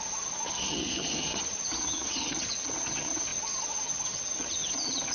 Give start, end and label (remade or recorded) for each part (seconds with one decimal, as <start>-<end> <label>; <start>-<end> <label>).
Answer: 0.0-5.1 remade